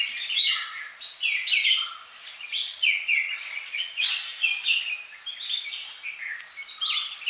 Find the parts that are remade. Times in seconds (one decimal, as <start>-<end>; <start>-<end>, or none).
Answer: 2.5-4.1